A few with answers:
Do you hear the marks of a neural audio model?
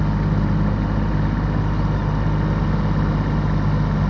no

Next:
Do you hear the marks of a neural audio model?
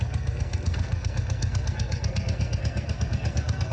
yes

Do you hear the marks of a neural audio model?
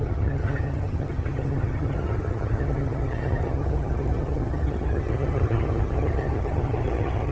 yes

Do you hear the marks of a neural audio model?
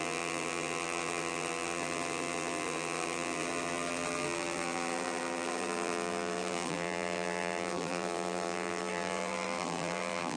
yes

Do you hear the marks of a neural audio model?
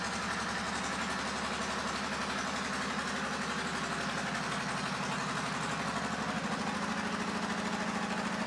no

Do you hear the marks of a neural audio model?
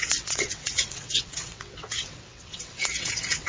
yes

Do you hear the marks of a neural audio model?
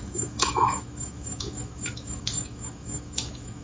yes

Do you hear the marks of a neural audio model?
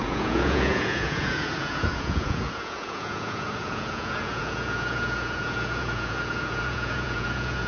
yes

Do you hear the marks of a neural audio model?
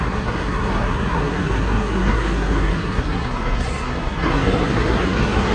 yes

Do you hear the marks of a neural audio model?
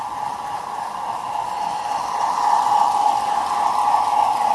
no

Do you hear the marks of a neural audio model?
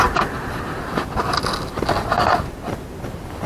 no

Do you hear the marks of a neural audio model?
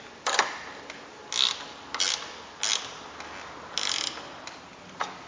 no